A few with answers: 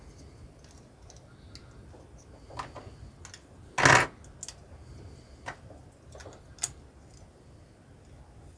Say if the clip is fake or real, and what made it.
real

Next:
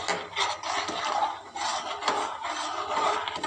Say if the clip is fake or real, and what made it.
real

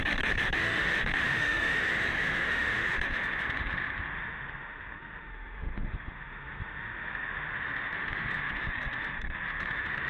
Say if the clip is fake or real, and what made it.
fake, autoencoder, DAC-VAE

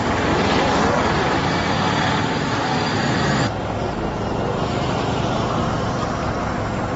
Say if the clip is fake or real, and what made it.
real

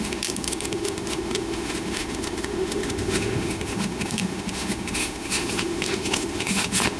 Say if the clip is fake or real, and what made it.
fake, autoencoder, DAC-VAE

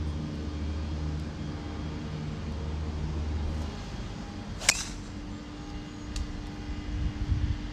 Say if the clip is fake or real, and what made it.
real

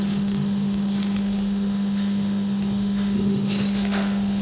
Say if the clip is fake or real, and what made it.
fake, autoencoder, DAC-VAE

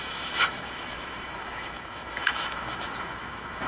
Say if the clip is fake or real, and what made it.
fake, autoencoder, DAC-VAE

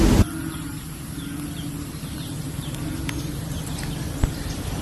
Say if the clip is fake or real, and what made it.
real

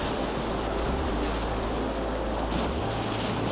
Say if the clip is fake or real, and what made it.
real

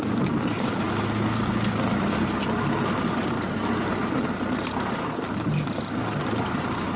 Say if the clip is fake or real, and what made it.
real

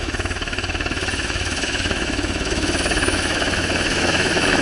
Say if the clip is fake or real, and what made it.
fake, autoencoder, DAC-VAE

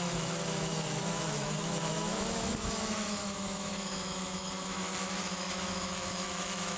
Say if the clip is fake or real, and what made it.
fake, autoencoder, DAC-VAE